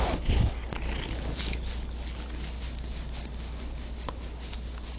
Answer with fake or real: real